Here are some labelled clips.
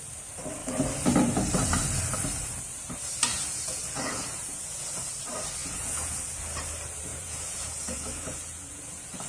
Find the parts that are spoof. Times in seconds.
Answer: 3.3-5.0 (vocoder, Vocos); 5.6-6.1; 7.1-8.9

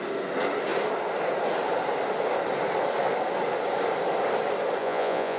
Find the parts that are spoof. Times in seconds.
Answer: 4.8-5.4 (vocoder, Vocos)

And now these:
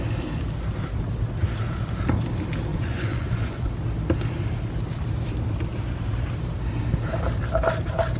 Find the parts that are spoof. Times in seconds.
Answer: 2.7-3.7 (vocoder, Vocos)

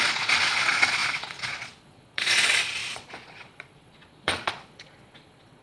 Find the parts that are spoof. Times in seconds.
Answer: 0.0-5.6 (vocoder, Vocos)

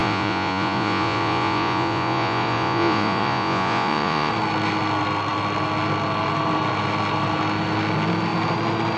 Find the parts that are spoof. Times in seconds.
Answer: 0.0-4.3 (vocoder, Vocos)